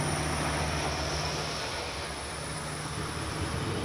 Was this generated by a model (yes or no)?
no